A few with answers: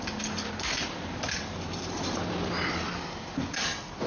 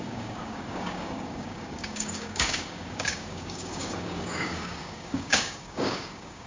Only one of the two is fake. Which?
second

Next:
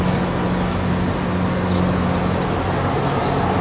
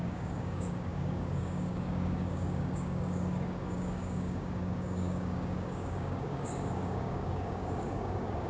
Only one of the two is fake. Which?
second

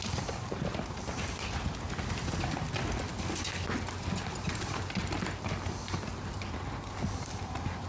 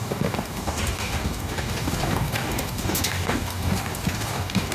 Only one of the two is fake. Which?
second